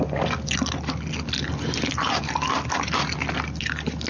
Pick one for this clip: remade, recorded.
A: recorded